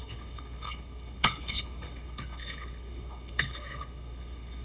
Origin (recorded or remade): remade